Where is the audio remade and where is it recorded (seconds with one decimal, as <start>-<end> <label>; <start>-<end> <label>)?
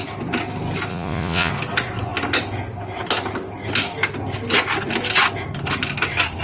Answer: 0.0-0.9 recorded; 0.9-1.5 remade; 1.5-6.4 recorded